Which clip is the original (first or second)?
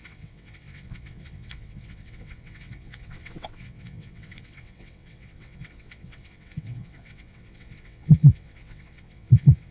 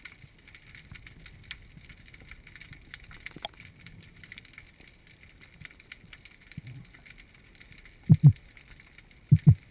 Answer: second